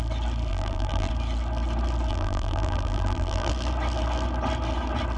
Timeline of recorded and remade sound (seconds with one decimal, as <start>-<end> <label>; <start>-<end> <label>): 0.0-0.5 recorded; 0.5-1.1 remade; 1.1-2.1 recorded; 2.1-3.5 remade; 3.5-5.2 recorded